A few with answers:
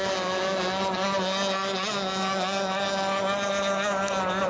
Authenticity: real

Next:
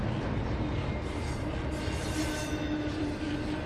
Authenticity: real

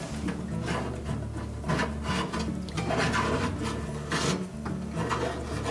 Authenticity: real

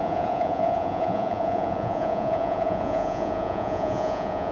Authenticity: fake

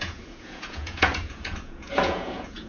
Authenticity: fake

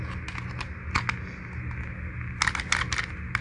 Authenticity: real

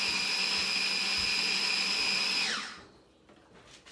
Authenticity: real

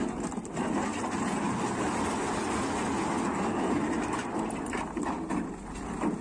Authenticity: real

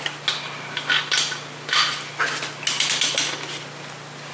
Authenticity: real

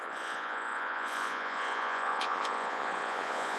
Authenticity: fake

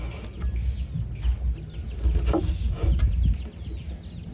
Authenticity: real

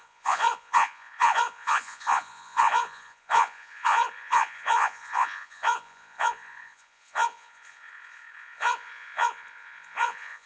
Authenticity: fake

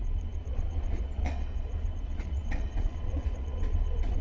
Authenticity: fake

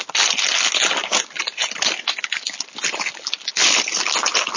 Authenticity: real